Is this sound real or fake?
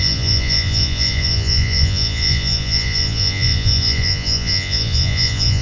fake